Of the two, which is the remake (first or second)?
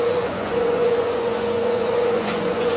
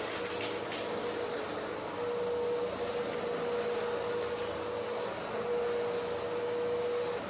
first